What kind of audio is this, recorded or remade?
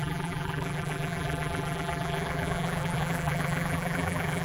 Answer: remade